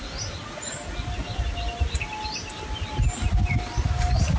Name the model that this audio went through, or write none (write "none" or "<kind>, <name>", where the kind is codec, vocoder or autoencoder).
none